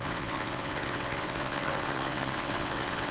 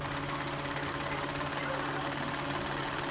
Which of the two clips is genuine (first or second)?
second